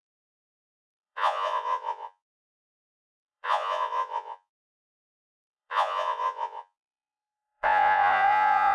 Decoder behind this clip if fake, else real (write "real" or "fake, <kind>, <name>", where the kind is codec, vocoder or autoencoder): fake, vocoder, Vocos